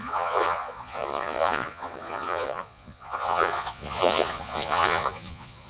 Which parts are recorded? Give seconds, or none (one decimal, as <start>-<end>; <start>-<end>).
none